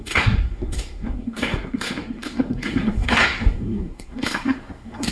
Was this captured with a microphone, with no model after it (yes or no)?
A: no